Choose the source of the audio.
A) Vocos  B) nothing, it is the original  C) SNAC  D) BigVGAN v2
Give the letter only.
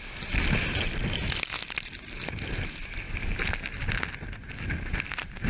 B